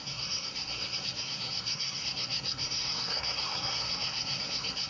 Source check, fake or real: fake